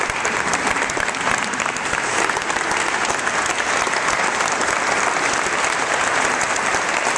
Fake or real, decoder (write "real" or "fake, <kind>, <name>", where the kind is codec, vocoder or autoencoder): real